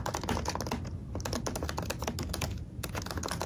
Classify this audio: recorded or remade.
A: recorded